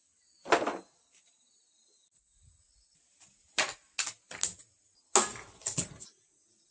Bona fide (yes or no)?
yes